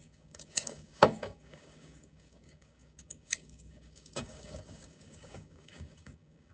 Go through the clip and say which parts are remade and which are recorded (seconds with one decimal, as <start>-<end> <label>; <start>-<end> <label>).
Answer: 0.0-6.5 remade